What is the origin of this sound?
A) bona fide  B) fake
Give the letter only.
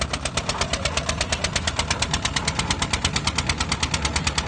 A